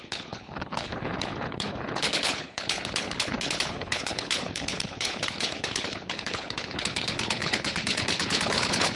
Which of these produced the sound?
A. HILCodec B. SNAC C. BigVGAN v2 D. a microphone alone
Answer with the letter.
A